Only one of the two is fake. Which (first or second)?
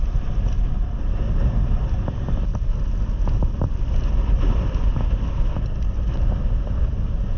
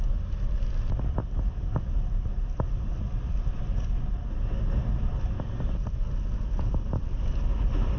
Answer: first